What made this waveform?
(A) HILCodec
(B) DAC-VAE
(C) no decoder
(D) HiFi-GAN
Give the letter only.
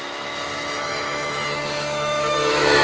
B